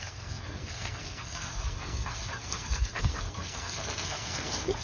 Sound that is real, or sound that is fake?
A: fake